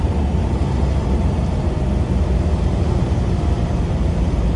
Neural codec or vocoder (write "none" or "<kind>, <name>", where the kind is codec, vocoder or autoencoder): none